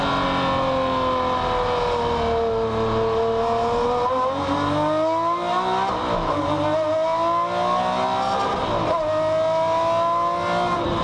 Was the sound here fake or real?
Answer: real